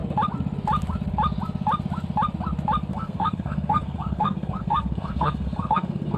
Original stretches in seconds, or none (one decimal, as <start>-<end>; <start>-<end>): 0.0-2.9